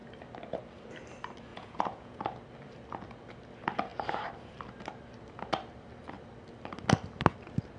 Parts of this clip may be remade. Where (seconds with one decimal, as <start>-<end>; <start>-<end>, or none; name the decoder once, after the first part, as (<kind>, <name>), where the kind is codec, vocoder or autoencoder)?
1.5-2.2 (vocoder, Vocos)